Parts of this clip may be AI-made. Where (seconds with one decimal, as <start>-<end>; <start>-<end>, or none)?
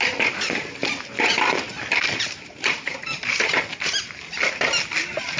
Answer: 1.7-3.0